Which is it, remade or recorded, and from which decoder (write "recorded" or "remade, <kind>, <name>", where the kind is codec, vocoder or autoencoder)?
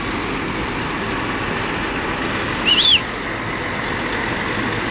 recorded